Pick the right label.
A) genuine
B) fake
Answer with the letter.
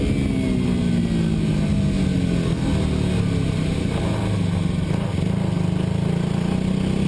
A